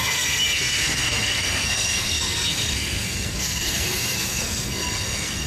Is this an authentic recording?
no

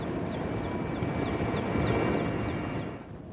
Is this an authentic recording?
yes